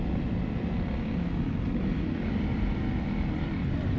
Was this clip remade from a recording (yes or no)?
no